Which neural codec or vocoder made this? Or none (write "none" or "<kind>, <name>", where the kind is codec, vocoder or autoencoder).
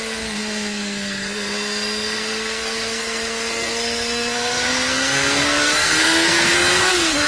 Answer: codec, SNAC